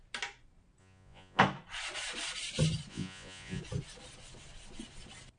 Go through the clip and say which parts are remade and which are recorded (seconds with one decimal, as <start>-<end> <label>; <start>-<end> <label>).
0.0-0.8 recorded; 0.8-1.4 remade; 1.4-2.9 recorded; 2.9-3.6 remade; 3.6-5.4 recorded